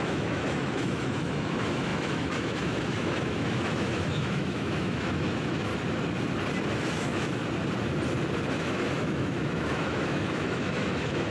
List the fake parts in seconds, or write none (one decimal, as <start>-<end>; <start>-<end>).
0.0-5.7; 6.7-7.4; 8.6-11.3

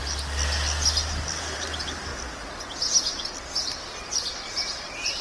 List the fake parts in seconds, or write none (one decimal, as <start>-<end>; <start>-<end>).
1.4-2.1; 3.4-5.2